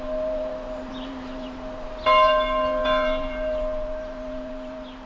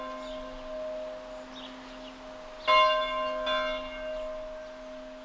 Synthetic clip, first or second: first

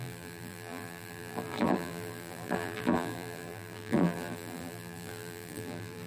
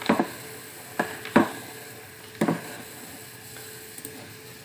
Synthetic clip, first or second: first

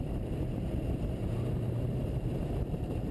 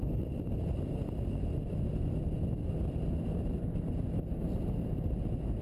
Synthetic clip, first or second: first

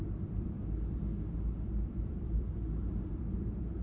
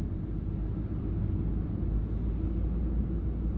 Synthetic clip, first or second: first